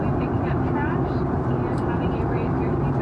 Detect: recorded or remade remade